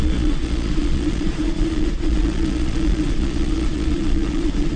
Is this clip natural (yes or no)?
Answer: no